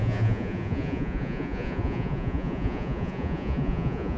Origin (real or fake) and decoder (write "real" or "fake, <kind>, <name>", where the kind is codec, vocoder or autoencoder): fake, vocoder, Vocos